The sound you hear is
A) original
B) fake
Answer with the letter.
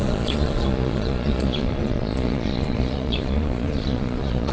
B